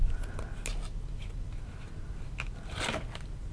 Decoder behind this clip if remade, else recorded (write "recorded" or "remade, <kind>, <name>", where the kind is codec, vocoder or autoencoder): recorded